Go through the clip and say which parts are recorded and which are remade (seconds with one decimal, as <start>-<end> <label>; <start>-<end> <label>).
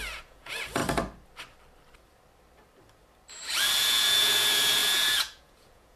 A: 0.0-0.8 remade; 0.8-3.8 recorded; 3.8-6.0 remade